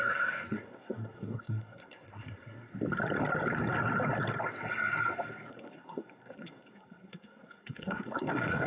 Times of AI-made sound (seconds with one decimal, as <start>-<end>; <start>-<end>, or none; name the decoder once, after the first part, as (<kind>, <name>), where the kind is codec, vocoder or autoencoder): 0.0-2.7 (codec, SNAC); 5.5-8.7